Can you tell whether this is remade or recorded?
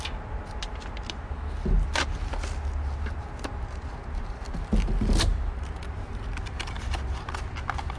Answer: recorded